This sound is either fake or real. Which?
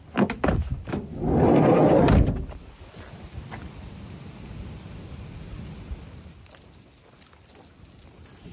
real